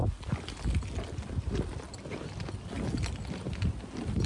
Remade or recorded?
recorded